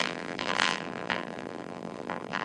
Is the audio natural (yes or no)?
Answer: no